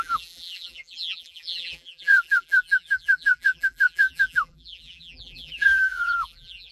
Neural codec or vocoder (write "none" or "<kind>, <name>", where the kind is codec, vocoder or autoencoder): vocoder, BigVGAN v2